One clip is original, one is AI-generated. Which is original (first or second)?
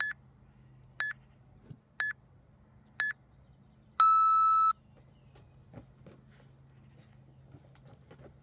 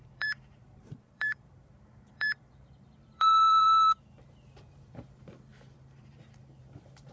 first